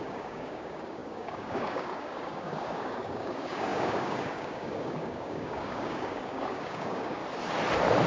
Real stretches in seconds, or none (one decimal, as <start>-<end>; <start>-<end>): 7.2-8.1